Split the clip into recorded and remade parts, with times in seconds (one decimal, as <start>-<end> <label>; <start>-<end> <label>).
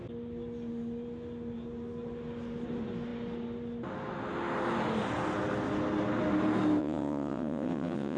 0.0-6.8 recorded; 6.8-8.2 remade